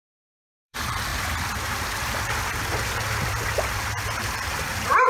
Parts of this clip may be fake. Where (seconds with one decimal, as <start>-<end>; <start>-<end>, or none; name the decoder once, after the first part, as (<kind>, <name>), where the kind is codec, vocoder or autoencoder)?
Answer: 0.0-1.1 (vocoder, BigVGAN v2); 4.2-5.1